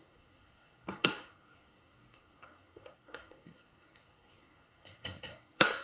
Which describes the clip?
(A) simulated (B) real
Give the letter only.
A